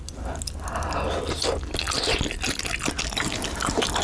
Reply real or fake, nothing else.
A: real